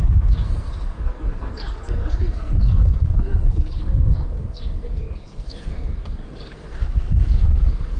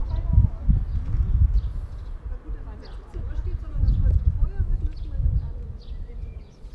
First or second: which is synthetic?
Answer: first